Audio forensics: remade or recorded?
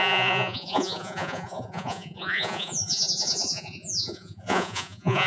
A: remade